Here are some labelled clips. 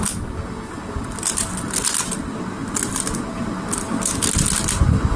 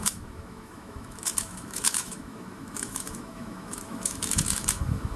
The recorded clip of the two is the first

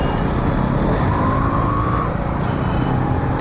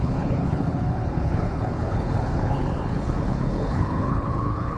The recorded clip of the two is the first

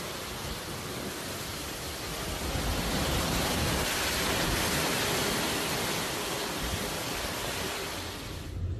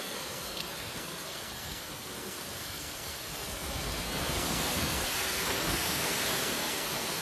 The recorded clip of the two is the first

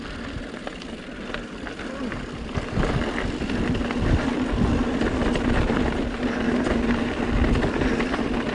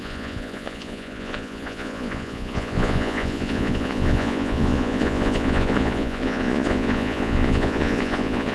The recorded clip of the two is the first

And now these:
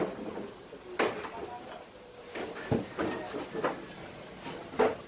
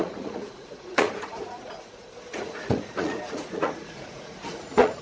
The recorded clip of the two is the first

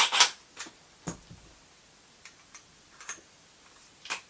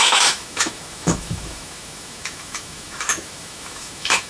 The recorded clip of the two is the first